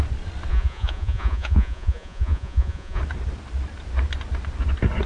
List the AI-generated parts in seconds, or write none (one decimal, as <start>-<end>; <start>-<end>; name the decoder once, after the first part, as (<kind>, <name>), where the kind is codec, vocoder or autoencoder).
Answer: 0.5-3.0 (vocoder, Vocos)